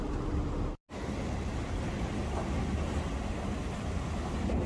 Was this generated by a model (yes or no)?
no